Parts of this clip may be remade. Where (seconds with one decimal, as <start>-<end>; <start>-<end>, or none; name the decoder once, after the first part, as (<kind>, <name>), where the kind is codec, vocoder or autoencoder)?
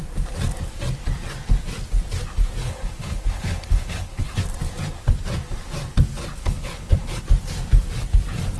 2.6-4.4 (codec, HILCodec); 6.4-7.2